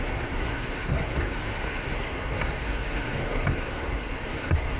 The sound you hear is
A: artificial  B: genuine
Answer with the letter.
A